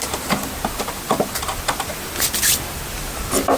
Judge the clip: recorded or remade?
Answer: recorded